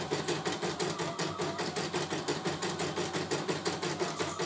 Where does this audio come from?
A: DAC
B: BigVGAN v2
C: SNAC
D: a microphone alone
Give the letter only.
B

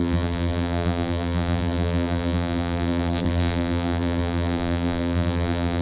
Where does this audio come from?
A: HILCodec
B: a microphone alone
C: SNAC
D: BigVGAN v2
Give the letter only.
D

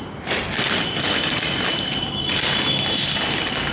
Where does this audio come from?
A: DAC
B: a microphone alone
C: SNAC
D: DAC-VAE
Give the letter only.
B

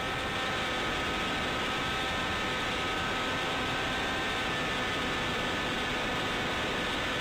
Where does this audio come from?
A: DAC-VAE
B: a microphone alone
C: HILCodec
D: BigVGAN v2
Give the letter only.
B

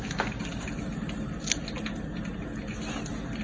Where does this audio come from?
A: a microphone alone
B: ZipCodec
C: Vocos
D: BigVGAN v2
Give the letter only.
A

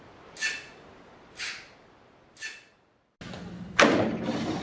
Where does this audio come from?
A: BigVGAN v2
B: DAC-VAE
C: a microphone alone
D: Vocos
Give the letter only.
C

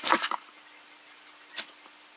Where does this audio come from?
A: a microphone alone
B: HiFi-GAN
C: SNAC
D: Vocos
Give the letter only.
A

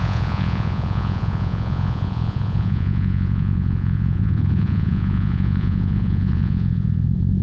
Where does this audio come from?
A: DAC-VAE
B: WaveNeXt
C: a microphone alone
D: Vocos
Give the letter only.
D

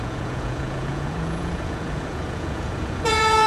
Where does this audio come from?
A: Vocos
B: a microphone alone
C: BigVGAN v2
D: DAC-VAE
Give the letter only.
A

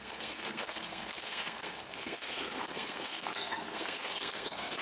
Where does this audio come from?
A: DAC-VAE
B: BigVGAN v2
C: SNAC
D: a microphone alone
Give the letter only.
C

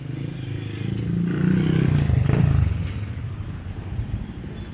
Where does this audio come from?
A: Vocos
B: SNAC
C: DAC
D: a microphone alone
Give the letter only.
D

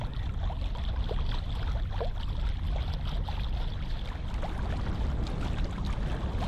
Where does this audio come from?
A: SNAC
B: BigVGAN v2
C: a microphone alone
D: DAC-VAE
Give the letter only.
C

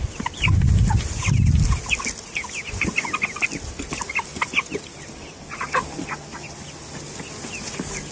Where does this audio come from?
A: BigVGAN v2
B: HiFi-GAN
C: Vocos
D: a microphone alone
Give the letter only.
D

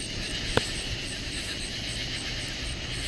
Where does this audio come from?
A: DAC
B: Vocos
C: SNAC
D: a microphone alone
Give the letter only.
D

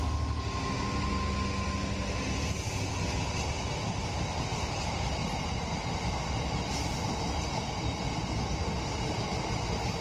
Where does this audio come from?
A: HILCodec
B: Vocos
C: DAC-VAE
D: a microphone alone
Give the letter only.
D